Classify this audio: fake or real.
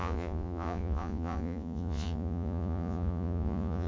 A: fake